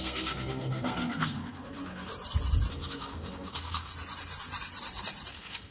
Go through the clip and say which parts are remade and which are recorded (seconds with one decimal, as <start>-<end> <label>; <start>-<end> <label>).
0.0-2.1 remade; 2.1-2.7 recorded; 2.7-3.9 remade; 3.9-5.3 recorded; 5.3-5.7 remade